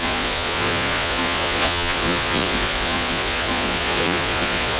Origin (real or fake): fake